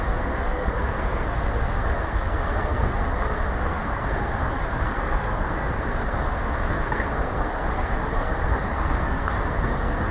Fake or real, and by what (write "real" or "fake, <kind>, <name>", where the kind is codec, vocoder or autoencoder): fake, codec, SNAC